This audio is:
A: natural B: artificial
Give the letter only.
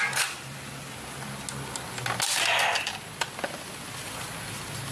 A